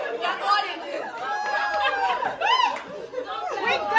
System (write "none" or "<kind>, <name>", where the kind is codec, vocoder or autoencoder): none